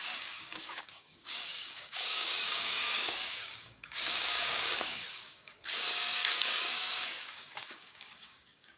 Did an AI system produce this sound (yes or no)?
yes